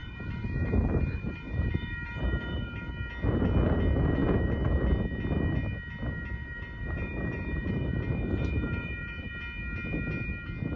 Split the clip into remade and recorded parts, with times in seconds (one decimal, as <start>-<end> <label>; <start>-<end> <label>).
0.0-2.9 remade; 2.9-6.4 recorded; 6.4-9.3 remade; 9.3-10.8 recorded